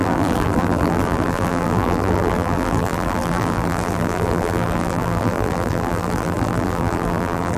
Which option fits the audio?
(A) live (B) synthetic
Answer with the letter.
B